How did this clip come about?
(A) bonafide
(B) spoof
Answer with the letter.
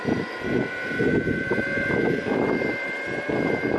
A